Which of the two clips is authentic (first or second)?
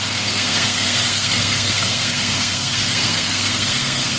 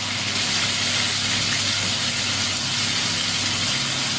second